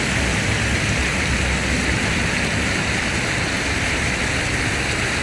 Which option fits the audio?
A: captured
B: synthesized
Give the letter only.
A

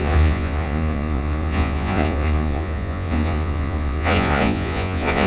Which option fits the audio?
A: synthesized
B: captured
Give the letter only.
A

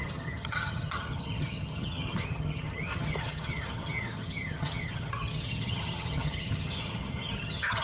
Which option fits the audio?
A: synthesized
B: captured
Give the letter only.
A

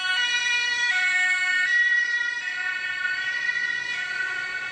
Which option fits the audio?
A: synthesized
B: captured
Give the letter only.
B